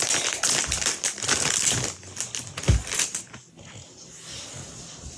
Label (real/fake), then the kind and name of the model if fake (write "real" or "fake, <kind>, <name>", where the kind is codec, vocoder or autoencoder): real